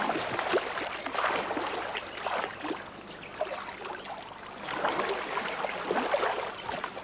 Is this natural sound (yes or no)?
yes